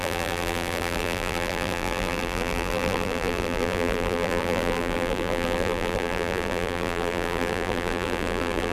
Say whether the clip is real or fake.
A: fake